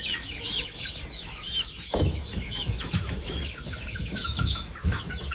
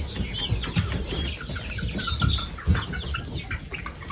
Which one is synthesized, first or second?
first